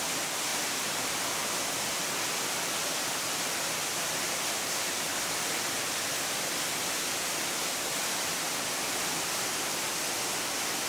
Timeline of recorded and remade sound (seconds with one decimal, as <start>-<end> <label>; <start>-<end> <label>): 0.0-10.9 recorded